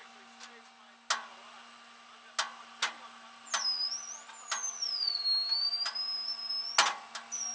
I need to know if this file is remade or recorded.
recorded